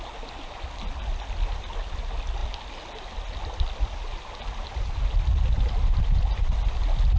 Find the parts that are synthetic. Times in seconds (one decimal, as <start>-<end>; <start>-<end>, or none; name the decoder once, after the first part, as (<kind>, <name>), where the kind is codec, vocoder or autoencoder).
none